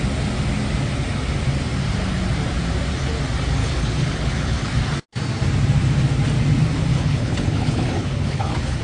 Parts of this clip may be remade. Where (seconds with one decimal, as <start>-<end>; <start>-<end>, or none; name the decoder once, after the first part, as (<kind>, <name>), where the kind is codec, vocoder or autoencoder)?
3.6-4.7 (codec, HILCodec); 6.9-8.8